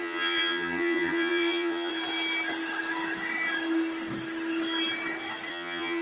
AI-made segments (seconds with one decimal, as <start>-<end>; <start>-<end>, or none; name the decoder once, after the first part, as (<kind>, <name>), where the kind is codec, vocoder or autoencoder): 0.0-1.9 (vocoder, HiFi-GAN); 5.5-6.0